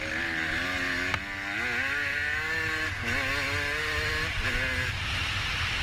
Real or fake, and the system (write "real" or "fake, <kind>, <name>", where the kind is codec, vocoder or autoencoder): real